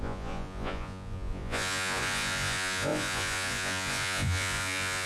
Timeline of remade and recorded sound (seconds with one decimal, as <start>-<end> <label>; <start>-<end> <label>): 0.0-5.1 remade